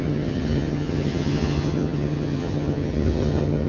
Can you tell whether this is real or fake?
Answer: fake